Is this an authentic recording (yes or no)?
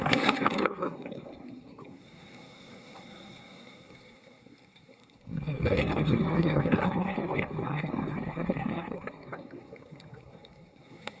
no